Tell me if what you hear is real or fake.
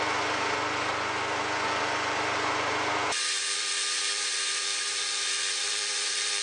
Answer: fake